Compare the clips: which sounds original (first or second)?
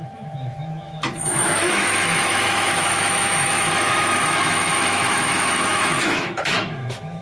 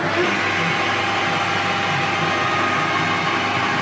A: second